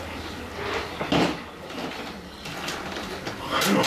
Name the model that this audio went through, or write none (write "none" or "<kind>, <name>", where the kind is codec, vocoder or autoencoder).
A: none